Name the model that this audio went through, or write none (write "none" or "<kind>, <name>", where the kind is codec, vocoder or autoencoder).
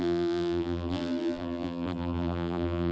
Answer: vocoder, BigVGAN v2